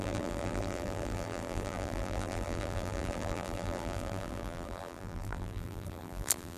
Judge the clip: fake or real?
fake